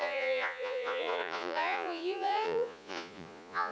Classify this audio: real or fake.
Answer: fake